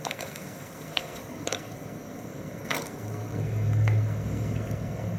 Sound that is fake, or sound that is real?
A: fake